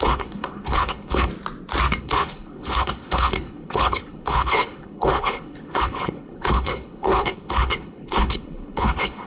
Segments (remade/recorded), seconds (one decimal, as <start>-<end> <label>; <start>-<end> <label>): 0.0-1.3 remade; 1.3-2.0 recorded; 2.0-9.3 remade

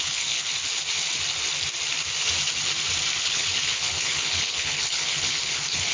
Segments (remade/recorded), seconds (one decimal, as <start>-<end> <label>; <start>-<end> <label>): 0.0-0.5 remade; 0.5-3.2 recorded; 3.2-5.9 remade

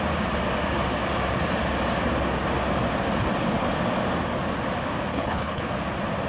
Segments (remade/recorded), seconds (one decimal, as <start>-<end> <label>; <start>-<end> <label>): 0.0-5.1 recorded; 5.1-5.7 remade; 5.7-6.3 recorded

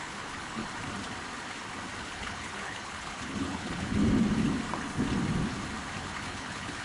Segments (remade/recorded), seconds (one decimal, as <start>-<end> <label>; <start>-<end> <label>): 0.0-0.6 remade; 0.6-2.0 recorded; 2.0-4.0 remade; 4.0-6.0 recorded; 6.0-6.8 remade

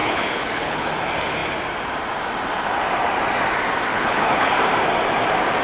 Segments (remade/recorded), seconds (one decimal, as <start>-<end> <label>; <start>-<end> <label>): 0.0-0.9 remade; 0.9-3.9 recorded; 3.9-4.5 remade; 4.5-5.6 recorded